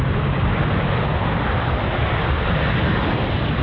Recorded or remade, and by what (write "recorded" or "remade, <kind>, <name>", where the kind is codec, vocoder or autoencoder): recorded